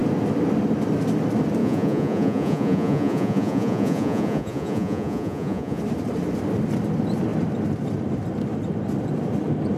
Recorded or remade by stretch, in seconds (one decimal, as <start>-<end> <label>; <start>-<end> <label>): 0.0-1.6 recorded; 1.6-5.8 remade; 5.8-9.8 recorded